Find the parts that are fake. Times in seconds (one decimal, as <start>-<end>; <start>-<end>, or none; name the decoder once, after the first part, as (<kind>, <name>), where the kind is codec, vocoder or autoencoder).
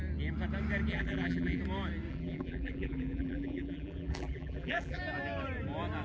0.9-1.6 (vocoder, BigVGAN v2); 2.1-5.0